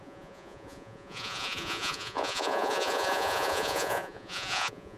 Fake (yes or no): yes